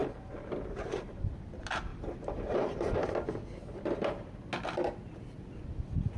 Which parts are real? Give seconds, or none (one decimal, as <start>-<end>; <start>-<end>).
1.2-1.9; 3.1-6.2